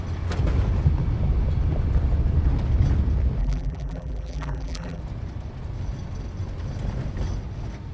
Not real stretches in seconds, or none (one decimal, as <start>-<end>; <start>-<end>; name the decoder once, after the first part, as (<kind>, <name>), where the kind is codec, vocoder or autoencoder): 3.4-5.0 (vocoder, BigVGAN v2)